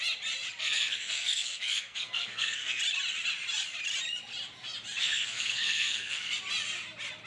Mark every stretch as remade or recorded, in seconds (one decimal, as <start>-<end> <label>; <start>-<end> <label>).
0.0-0.6 recorded; 0.6-2.8 remade; 2.8-5.0 recorded; 5.0-6.3 remade; 6.3-7.3 recorded